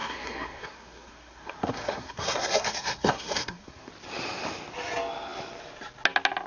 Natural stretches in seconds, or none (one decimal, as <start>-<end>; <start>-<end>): 3.9-6.5